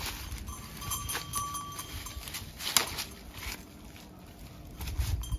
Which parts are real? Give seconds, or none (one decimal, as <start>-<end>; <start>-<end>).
0.0-5.4